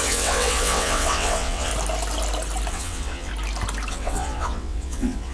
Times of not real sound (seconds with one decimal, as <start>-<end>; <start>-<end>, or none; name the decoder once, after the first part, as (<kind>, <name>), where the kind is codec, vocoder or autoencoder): 0.0-1.7 (vocoder, WaveNeXt); 2.7-3.3; 3.9-5.3